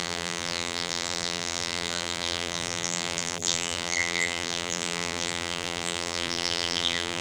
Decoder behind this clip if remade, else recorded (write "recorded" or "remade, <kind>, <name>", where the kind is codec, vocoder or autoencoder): remade, vocoder, BigVGAN v2